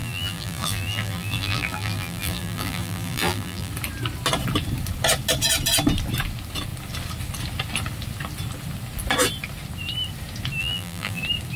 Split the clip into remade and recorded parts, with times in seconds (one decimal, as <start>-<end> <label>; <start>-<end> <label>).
0.0-3.7 remade; 3.7-10.6 recorded; 10.6-11.2 remade; 11.2-11.6 recorded

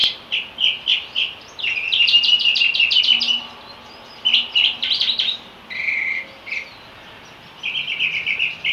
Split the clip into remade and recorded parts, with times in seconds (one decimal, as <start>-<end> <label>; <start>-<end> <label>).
0.0-8.7 recorded

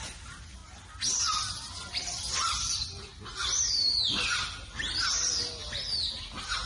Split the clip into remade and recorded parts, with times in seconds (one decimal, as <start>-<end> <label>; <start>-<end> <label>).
0.0-0.6 remade; 0.6-1.8 recorded; 1.8-3.1 remade; 3.1-3.7 recorded; 3.7-5.6 remade; 5.6-6.7 recorded

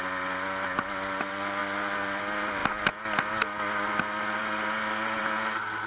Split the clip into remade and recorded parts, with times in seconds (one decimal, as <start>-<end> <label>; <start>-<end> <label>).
0.0-5.9 recorded

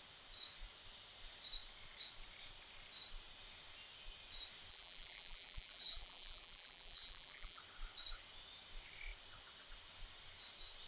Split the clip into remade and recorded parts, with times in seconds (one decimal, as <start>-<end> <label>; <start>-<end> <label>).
0.0-4.7 recorded; 4.7-7.6 remade; 7.6-10.9 recorded

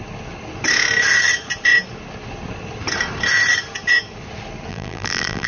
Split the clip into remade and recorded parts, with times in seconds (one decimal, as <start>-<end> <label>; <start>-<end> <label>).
0.0-4.7 recorded; 4.7-5.5 remade

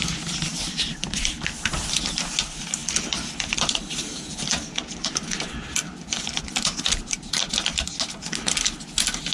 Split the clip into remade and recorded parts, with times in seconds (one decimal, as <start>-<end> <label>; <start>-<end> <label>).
0.0-0.5 recorded; 0.5-1.3 remade; 1.3-2.8 recorded; 2.8-7.5 remade; 7.5-9.3 recorded